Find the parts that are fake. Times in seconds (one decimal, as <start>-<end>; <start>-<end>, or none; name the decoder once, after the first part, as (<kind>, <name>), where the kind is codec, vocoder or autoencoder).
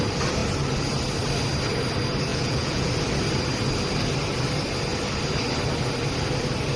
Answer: 2.3-2.9 (vocoder, Vocos)